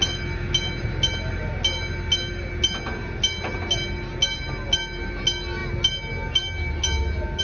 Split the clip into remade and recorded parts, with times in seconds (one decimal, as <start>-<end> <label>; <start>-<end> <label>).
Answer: 0.0-7.4 recorded